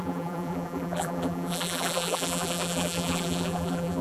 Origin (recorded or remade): remade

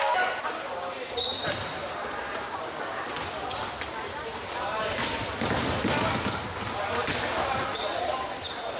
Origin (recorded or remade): recorded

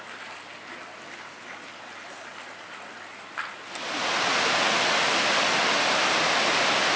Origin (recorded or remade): recorded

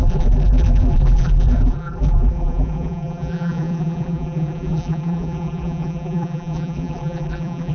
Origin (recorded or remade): remade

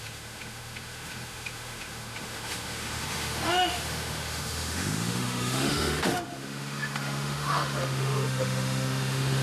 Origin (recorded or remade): remade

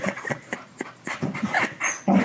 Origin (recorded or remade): recorded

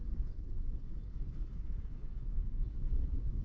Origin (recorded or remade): remade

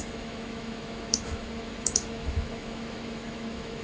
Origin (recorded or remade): remade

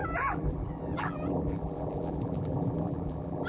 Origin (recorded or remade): remade